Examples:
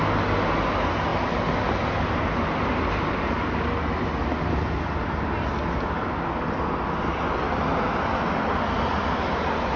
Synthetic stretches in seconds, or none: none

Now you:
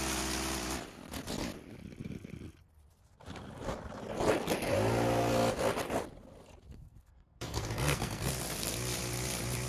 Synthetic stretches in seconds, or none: 6.7-8.3 (codec, SNAC)

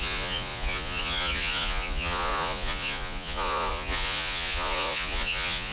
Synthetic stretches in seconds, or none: 0.0-5.7 (vocoder, Vocos)

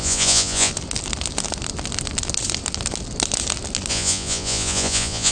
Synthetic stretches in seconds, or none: 0.0-0.7 (vocoder, Vocos); 3.9-5.3

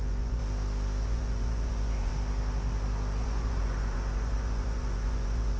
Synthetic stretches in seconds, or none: 0.0-0.4 (vocoder, Vocos); 1.0-2.1; 3.2-5.6

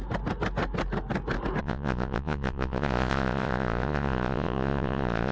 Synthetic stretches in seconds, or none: 1.6-5.3 (vocoder, Vocos)

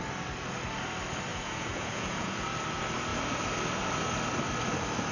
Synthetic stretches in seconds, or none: 1.3-2.3 (vocoder, Vocos)

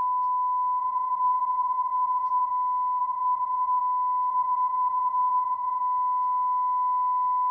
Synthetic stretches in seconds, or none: 0.8-2.5 (vocoder, Vocos); 3.0-3.8; 4.3-5.8